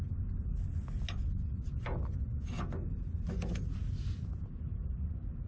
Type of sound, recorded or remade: recorded